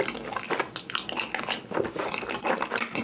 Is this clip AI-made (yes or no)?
no